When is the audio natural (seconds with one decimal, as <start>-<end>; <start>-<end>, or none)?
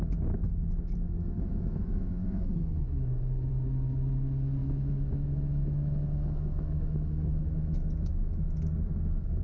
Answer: 0.0-0.4; 3.5-4.6; 8.7-9.4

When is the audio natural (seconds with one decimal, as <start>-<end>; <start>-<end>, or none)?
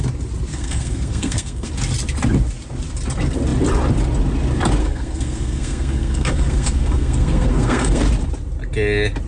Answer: 0.0-0.5; 1.7-4.8; 8.0-9.3